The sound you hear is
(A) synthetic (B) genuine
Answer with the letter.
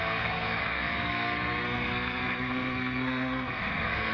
A